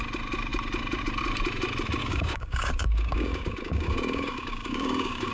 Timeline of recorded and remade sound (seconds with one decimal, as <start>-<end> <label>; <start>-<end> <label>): 0.0-2.0 recorded; 2.0-5.3 remade